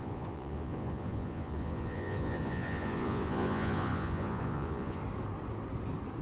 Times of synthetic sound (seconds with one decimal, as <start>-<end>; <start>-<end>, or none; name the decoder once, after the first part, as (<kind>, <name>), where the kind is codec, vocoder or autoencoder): 0.0-5.0 (vocoder, Vocos)